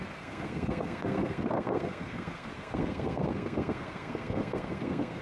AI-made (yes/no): yes